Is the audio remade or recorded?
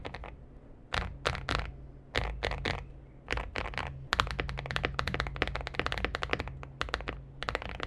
recorded